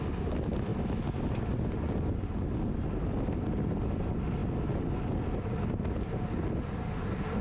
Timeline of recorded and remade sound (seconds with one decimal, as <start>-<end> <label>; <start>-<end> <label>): 0.0-7.4 recorded